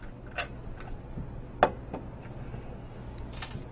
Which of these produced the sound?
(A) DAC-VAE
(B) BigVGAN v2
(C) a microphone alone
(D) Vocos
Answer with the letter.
C